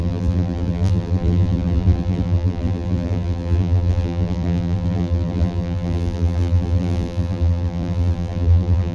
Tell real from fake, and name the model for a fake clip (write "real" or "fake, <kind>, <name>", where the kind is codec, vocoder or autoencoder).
fake, vocoder, BigVGAN v2